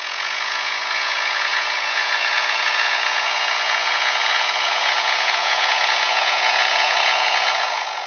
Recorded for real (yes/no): no